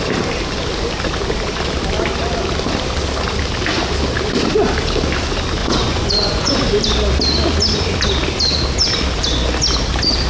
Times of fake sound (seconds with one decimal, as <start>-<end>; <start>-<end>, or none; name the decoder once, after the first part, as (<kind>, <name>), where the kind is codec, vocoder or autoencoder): 5.6-6.5 (vocoder, Vocos)